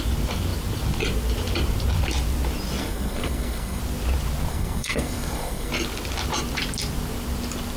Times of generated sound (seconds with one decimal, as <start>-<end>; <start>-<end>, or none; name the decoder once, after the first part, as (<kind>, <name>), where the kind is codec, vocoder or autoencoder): 2.8-3.8 (codec, SNAC); 4.5-5.7